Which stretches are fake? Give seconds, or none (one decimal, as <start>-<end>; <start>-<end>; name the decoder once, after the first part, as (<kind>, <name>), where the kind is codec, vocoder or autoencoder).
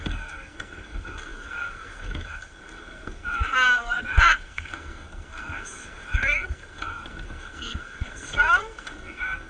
0.0-9.5 (codec, SNAC)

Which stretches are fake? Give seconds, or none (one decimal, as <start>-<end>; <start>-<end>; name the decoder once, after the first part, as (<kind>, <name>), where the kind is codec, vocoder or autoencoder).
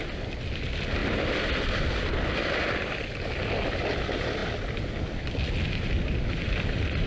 none